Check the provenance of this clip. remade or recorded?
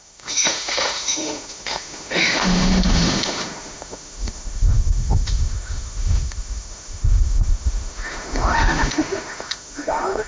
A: remade